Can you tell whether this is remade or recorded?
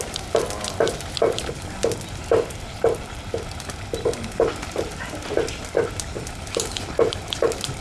recorded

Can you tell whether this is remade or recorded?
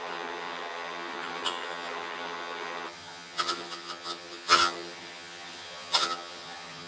remade